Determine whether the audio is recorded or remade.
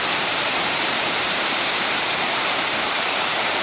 remade